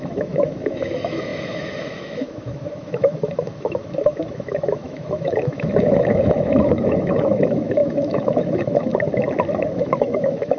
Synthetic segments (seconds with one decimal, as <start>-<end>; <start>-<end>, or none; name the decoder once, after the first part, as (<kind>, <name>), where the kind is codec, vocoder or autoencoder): 0.0-8.9 (autoencoder, DAC-VAE); 9.7-10.6